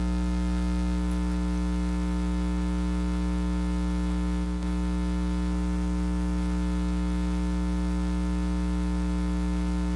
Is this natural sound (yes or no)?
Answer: yes